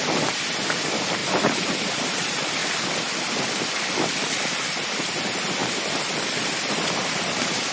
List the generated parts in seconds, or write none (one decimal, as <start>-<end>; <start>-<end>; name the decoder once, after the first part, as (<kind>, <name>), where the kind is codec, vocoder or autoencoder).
0.0-2.6 (vocoder, BigVGAN v2); 3.3-5.6; 6.4-7.7